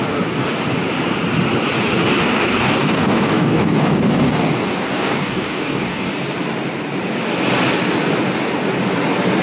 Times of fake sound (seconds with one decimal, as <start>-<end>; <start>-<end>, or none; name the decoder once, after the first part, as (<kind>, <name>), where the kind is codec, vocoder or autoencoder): 2.2-6.1 (codec, DAC)